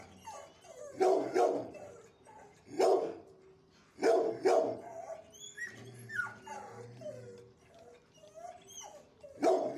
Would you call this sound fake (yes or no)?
no